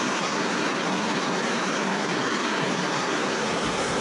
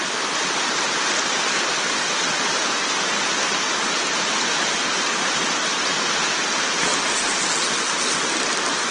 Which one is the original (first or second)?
second